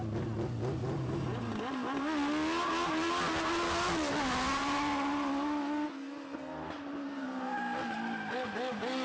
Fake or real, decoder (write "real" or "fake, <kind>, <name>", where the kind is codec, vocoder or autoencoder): real